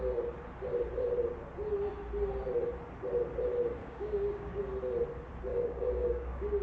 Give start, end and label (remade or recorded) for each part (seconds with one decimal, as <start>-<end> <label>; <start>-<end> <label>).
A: 0.0-3.8 recorded; 3.8-4.6 remade; 4.6-5.5 recorded; 5.5-6.6 remade